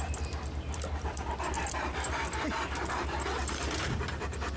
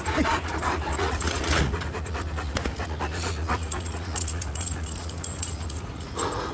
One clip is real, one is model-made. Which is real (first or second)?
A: first